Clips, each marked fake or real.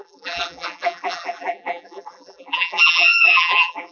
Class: fake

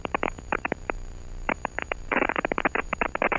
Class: fake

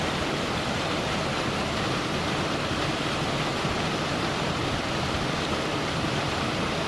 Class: fake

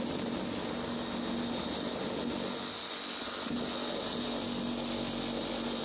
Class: real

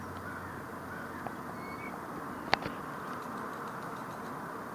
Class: real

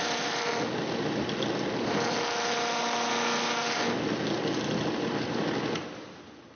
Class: real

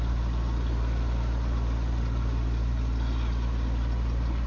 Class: real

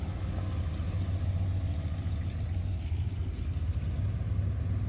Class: real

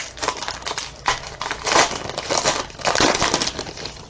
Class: fake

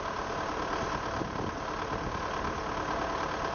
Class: real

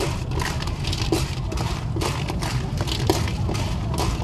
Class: real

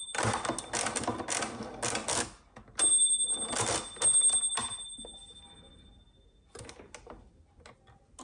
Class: real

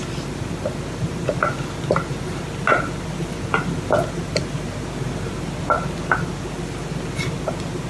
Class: real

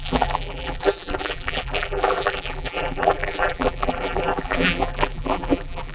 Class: fake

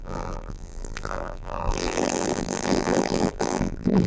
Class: fake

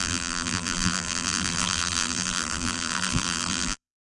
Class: fake